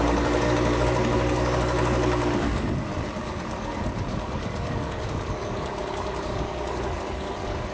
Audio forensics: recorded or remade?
remade